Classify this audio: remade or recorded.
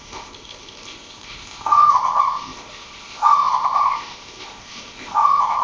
remade